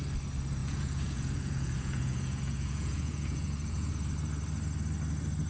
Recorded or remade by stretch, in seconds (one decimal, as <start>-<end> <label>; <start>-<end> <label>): 0.0-0.6 recorded; 0.6-3.9 remade; 3.9-5.5 recorded